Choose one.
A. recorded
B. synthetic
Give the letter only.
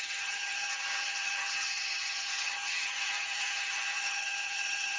B